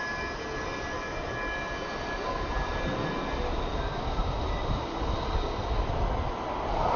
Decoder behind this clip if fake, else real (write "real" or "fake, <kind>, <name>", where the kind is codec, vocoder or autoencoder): real